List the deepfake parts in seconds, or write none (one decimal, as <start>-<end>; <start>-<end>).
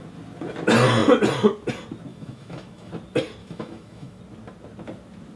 2.1-2.9; 3.4-4.2